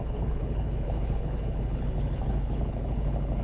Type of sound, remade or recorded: remade